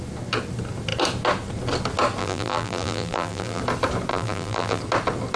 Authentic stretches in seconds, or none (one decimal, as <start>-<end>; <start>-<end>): 0.0-2.2; 3.6-4.1; 4.8-5.4